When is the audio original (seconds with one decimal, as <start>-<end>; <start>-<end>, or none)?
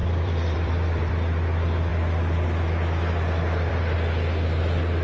1.1-5.0